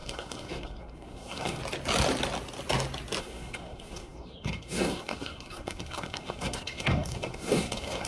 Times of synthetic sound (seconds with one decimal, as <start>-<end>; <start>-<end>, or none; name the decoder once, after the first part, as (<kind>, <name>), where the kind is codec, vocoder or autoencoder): 0.0-1.6 (codec, SNAC); 3.2-8.1